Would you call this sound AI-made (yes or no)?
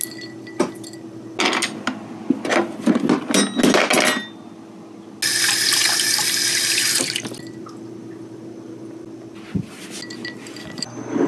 no